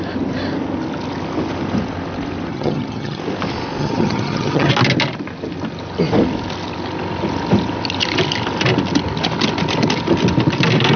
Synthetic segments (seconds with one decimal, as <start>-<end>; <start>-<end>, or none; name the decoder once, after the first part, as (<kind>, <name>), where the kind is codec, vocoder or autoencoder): 2.5-3.2 (vocoder, HiFi-GAN); 3.8-4.7